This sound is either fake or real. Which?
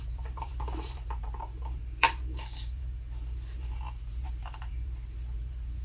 fake